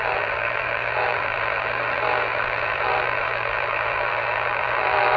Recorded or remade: remade